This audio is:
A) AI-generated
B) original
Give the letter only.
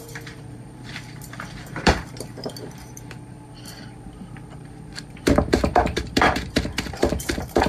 A